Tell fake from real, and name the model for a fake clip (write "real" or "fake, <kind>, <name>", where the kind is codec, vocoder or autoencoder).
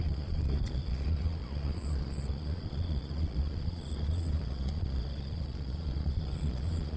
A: fake, vocoder, Vocos